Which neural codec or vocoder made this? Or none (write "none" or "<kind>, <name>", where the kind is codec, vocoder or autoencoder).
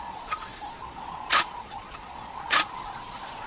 vocoder, Vocos